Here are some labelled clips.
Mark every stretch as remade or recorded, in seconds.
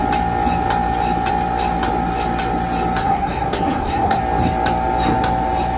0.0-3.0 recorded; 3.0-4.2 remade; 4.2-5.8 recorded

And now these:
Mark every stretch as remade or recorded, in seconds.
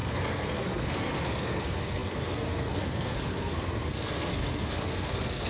0.0-5.5 remade